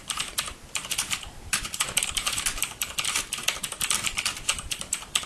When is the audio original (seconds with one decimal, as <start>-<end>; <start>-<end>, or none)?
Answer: none